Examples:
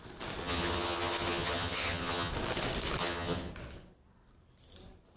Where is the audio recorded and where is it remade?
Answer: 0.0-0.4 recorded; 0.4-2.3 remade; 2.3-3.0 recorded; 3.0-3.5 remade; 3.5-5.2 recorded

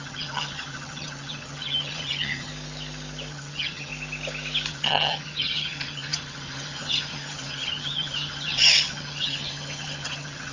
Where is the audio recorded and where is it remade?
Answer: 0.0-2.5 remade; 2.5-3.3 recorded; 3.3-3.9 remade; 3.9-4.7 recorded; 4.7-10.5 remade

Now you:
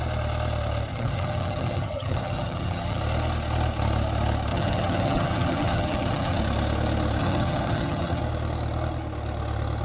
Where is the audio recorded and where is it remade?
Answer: 0.0-0.9 recorded; 0.9-3.0 remade; 3.0-4.5 recorded; 4.5-6.4 remade; 6.4-7.2 recorded; 7.2-8.2 remade; 8.2-9.8 recorded

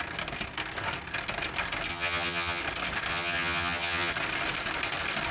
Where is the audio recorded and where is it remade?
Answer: 0.0-1.9 recorded; 1.9-2.6 remade; 2.6-3.1 recorded; 3.1-4.1 remade; 4.1-5.3 recorded